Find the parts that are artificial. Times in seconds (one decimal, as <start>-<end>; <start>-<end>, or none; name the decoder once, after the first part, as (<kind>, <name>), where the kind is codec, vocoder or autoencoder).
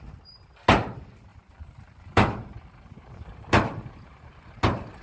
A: 1.3-4.3 (vocoder, BigVGAN v2)